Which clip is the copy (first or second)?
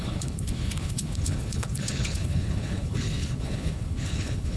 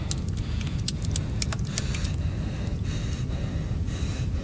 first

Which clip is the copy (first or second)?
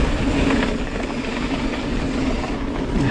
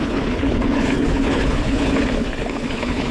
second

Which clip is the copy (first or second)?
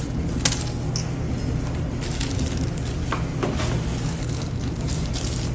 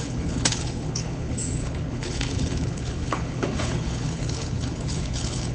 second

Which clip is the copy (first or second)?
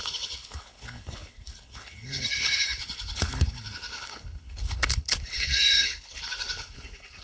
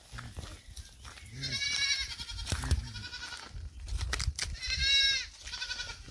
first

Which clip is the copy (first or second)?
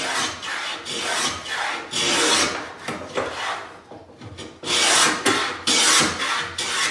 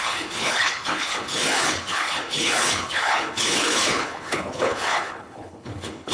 second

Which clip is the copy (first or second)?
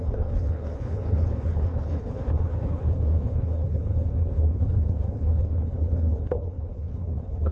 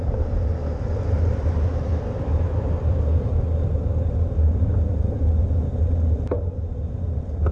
first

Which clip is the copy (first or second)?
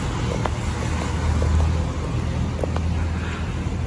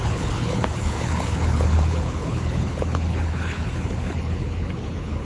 second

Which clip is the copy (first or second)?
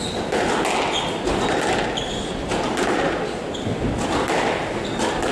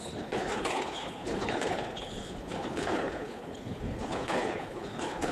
second